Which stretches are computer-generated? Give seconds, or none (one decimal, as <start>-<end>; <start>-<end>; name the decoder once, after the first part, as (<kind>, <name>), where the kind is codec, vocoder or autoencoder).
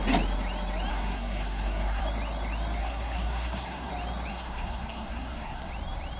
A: 0.9-2.0 (codec, SNAC); 2.8-3.9; 4.3-5.7